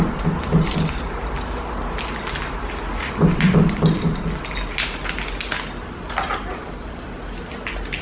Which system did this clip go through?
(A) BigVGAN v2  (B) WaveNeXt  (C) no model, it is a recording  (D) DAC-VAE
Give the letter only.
C